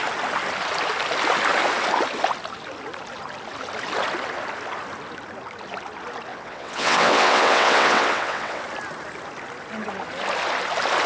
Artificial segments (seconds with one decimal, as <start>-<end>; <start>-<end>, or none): 6.3-8.6